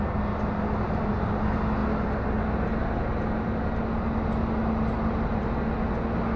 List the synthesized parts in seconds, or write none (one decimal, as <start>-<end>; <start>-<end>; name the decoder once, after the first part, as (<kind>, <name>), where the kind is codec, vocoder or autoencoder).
none